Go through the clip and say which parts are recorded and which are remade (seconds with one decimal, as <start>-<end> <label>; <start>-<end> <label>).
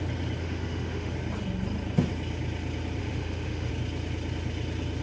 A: 0.0-0.4 recorded; 0.4-1.1 remade; 1.1-3.0 recorded; 3.0-3.7 remade; 3.7-5.0 recorded